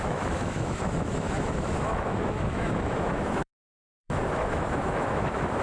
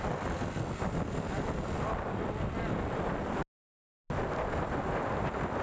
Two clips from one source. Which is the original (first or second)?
second